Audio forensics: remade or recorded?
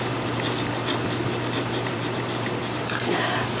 remade